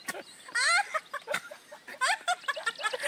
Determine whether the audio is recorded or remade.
recorded